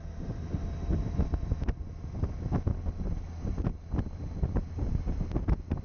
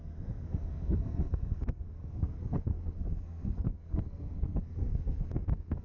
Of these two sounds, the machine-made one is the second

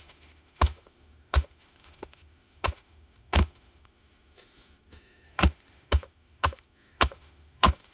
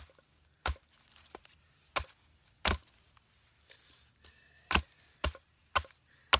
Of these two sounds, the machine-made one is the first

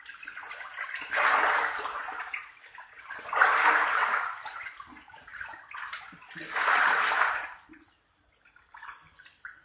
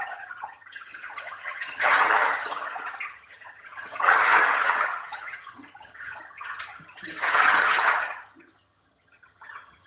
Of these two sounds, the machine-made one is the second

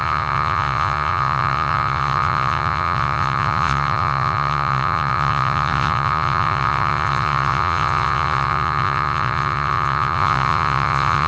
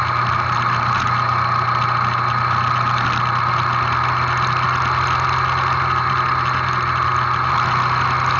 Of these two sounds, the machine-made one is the first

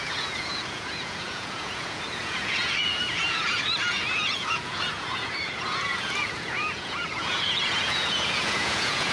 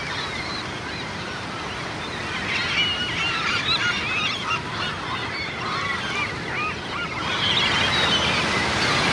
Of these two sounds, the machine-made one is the first